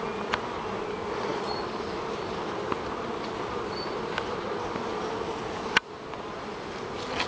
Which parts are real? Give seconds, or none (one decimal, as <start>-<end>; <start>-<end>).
0.0-7.3